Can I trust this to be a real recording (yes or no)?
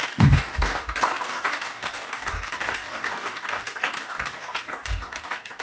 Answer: no